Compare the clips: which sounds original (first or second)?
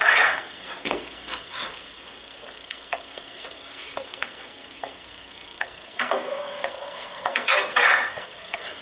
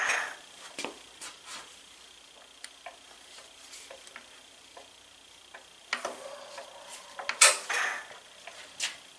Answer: second